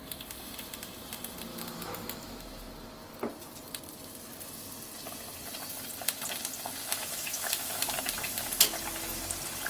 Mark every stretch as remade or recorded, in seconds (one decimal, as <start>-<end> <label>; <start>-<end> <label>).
0.0-1.5 recorded; 1.5-2.7 remade; 2.7-6.8 recorded; 6.8-8.0 remade; 8.0-9.7 recorded

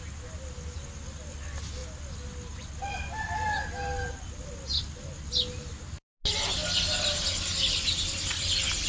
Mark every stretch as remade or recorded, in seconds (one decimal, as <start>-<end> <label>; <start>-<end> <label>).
0.0-8.9 recorded

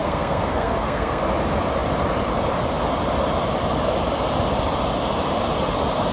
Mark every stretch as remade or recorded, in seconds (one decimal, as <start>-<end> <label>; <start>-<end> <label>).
0.0-1.2 remade; 1.2-6.1 recorded

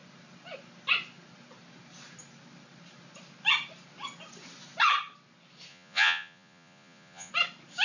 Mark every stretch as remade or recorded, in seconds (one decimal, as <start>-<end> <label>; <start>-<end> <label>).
0.0-5.7 recorded; 5.7-7.3 remade; 7.3-7.8 recorded

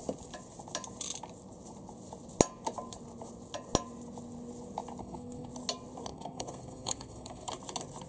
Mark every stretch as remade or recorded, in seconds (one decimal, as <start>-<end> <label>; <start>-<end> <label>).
0.0-5.0 recorded; 5.0-5.5 remade; 5.5-6.1 recorded; 6.1-7.5 remade; 7.5-8.1 recorded

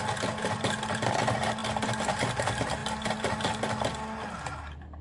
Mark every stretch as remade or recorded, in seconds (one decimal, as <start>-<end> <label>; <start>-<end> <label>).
0.0-5.0 recorded